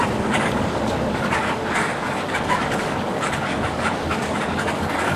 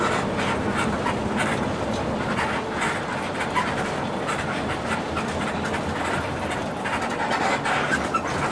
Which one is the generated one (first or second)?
first